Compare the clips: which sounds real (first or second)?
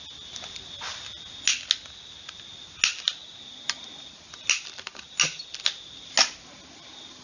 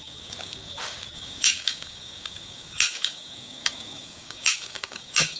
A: first